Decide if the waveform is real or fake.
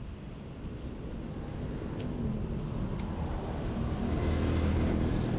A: real